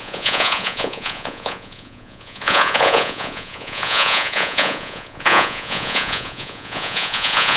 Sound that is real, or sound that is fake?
fake